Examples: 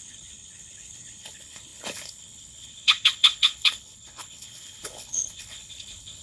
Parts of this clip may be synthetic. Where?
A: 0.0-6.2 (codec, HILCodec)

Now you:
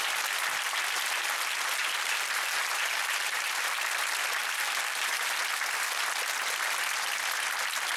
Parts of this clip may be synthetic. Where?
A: 1.8-3.7 (vocoder, BigVGAN v2); 4.4-5.3

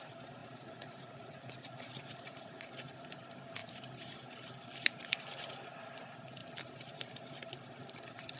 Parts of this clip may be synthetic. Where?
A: 0.4-2.7 (vocoder, Vocos)

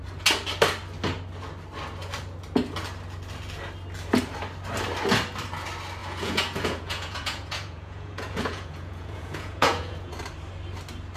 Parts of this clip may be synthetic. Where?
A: 6.0-10.1 (vocoder, Vocos)

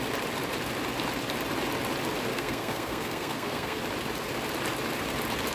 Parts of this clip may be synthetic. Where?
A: 2.3-3.8 (codec, SNAC)

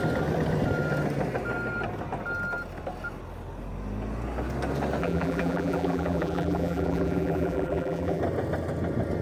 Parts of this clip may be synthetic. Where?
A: 5.0-8.2 (vocoder, BigVGAN v2)

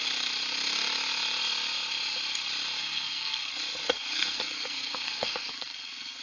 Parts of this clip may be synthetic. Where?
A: 2.8-3.5 (codec, SNAC); 3.9-6.2